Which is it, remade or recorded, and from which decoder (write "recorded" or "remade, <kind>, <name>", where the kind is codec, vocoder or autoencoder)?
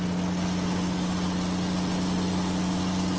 recorded